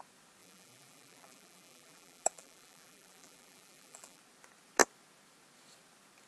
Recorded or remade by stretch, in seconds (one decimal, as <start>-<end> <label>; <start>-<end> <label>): 0.0-0.4 recorded; 0.4-4.2 remade; 4.2-6.3 recorded